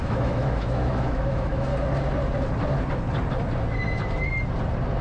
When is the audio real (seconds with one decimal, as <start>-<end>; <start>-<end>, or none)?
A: 1.7-5.0